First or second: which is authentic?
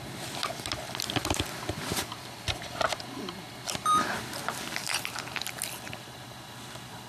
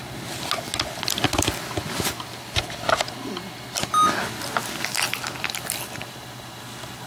second